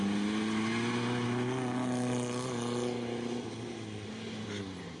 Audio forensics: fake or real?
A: real